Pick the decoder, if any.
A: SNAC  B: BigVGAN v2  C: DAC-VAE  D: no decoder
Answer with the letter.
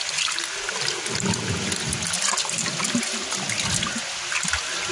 D